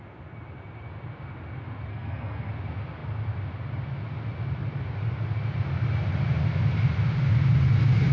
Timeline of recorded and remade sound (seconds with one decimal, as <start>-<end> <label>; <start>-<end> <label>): 0.0-1.9 recorded; 1.9-2.5 remade; 2.5-8.1 recorded